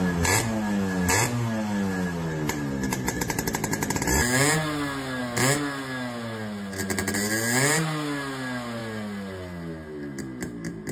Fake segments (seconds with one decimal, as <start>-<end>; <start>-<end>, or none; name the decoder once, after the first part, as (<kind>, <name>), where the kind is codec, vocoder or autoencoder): none